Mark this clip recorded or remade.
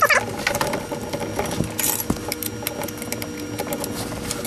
recorded